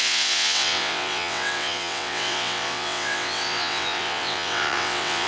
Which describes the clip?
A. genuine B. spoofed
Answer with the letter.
B